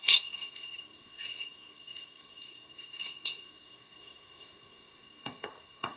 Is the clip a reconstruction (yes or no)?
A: yes